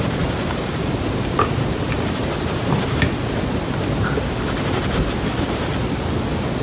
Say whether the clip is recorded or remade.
recorded